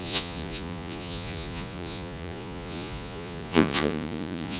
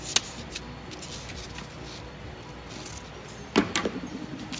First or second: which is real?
second